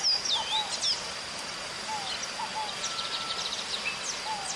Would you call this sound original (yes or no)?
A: yes